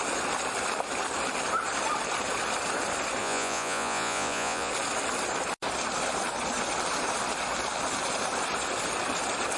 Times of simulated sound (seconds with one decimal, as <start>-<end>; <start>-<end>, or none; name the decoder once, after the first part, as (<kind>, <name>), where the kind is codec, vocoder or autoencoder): 3.2-4.7 (vocoder, Vocos)